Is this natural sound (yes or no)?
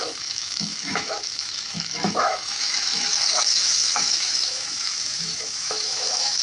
no